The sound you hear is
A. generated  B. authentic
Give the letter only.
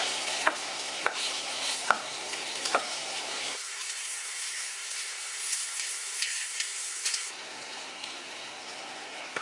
A